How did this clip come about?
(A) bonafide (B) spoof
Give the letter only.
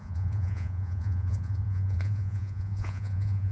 B